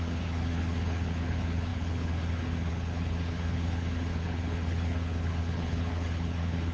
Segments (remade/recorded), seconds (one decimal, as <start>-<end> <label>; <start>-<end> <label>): 0.0-6.7 remade